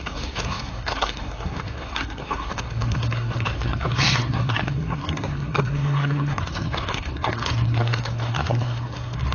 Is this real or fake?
fake